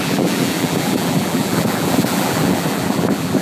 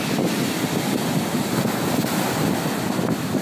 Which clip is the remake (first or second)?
first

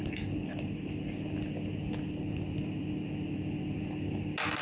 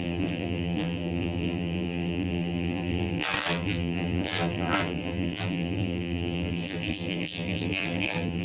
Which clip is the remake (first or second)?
second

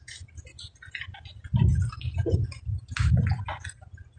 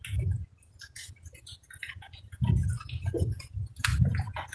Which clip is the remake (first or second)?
second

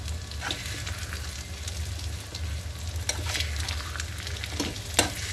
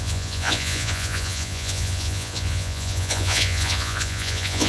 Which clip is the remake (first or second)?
second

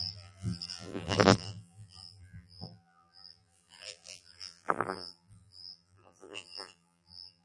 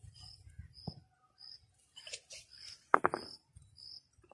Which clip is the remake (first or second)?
first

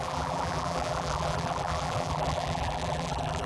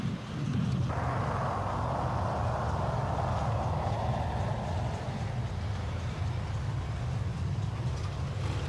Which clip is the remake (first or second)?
first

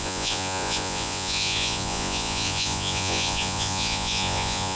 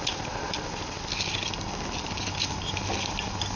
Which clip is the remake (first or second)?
first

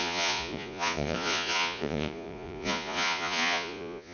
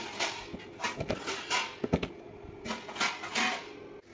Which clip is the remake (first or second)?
first